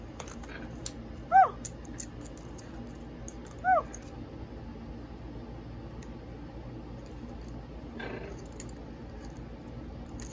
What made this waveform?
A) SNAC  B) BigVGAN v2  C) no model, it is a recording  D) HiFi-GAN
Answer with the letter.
C